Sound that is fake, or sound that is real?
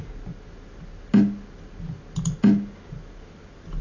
real